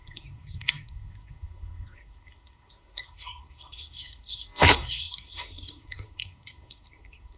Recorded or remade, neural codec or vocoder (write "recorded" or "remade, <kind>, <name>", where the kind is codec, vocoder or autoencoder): remade, codec, SNAC